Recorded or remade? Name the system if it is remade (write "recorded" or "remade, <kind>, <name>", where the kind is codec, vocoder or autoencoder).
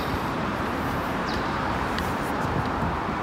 remade, vocoder, BigVGAN v2